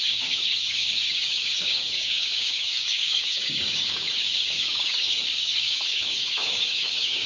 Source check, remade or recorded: remade